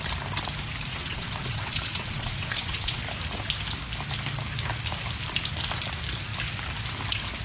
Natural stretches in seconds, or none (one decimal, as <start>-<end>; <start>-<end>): 0.0-0.9; 3.0-7.4